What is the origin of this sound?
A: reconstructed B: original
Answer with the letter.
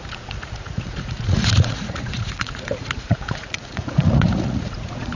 A